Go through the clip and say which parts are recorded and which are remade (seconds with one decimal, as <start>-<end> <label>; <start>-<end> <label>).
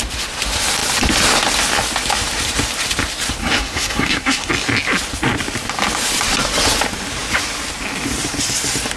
0.0-3.4 recorded; 3.4-4.5 remade; 4.5-9.0 recorded